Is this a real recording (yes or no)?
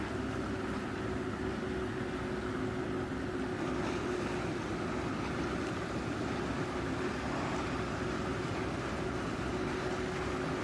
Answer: yes